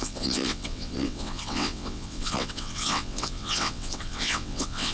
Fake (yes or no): yes